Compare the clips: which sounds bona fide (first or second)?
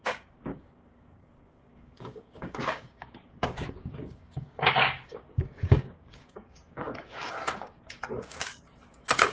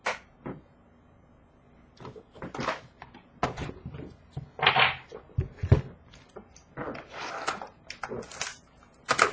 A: second